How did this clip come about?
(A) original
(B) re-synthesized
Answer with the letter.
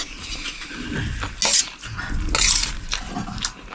A